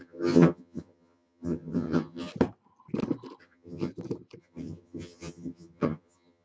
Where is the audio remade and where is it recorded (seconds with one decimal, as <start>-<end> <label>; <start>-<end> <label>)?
0.0-2.3 remade; 2.3-3.4 recorded; 3.4-3.9 remade; 3.9-4.4 recorded; 4.4-6.4 remade